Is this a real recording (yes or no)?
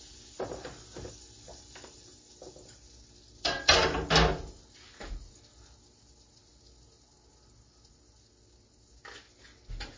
yes